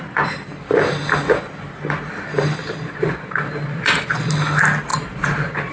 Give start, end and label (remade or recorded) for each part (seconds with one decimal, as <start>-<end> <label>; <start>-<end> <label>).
0.0-2.6 recorded; 2.6-4.3 remade; 4.3-4.9 recorded; 4.9-5.7 remade